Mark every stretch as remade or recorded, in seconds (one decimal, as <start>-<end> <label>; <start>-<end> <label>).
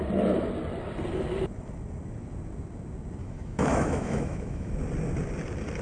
0.0-3.2 recorded; 3.2-4.7 remade; 4.7-5.8 recorded